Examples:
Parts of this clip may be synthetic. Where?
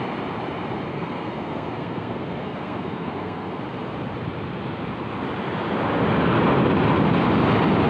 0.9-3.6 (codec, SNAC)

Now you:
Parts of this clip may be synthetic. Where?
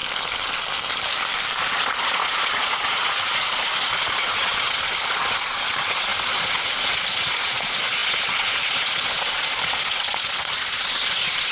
1.6-11.5 (vocoder, Vocos)